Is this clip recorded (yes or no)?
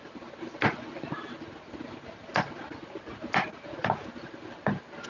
yes